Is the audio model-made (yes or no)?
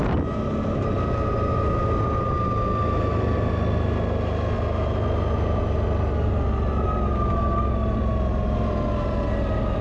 no